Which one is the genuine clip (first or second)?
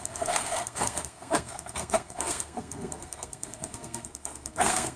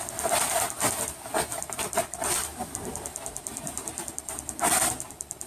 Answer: second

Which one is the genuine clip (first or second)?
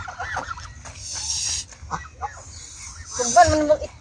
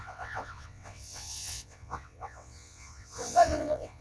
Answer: first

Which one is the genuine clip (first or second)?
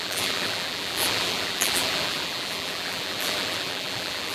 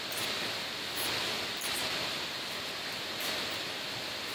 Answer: second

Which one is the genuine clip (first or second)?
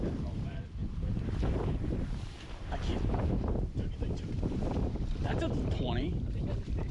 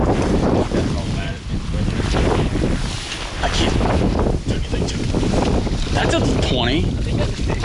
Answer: second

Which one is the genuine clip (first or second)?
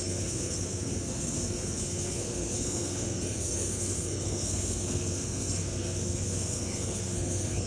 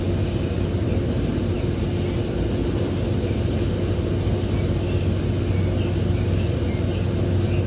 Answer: second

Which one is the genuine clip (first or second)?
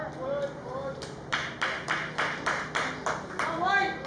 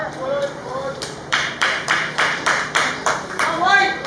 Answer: first